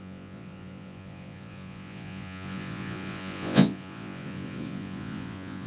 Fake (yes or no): yes